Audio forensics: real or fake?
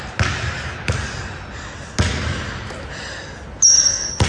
real